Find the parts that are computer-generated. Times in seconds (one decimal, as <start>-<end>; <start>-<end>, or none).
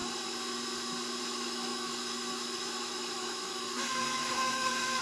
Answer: 1.2-5.0